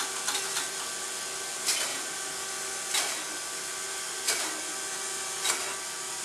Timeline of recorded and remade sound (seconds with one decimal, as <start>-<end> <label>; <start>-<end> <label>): 0.0-6.2 recorded